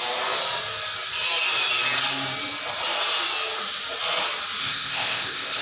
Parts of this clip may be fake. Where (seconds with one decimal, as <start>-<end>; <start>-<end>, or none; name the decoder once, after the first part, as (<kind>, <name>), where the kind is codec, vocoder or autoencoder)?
4.6-5.6 (codec, ZipCodec)